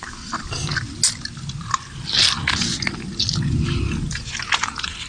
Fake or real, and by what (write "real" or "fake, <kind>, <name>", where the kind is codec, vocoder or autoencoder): real